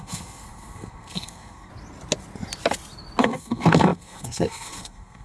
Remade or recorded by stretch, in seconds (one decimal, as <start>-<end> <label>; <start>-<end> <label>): 0.0-1.7 remade; 1.7-3.2 recorded; 3.2-5.2 remade